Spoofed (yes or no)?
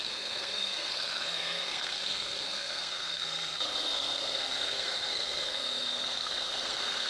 yes